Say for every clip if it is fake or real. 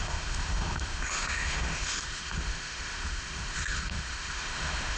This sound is fake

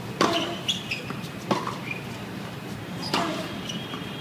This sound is real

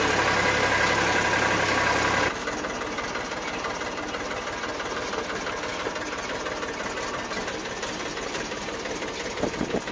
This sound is real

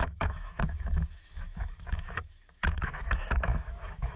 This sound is fake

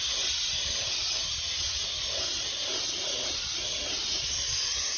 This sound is real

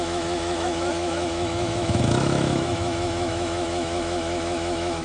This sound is fake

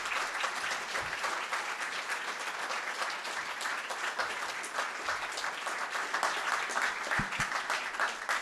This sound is real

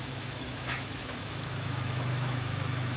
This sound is fake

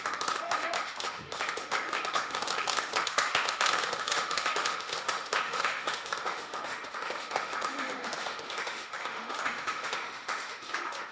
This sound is fake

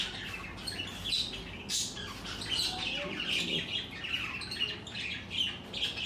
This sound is real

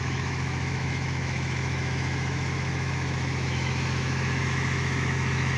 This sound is fake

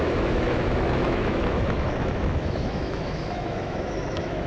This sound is fake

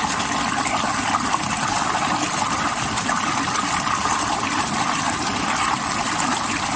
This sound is real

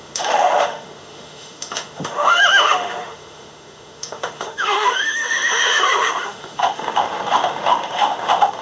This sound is fake